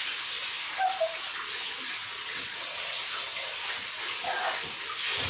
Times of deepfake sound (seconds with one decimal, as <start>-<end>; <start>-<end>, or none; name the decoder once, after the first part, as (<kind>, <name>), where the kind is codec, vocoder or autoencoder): 2.0-3.0 (vocoder, WaveNeXt)